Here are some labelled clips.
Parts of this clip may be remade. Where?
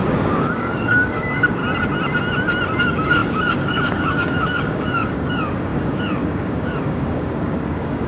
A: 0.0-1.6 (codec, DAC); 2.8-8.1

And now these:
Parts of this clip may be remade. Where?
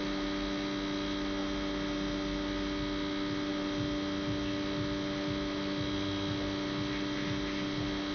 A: none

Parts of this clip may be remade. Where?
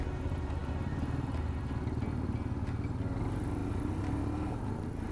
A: none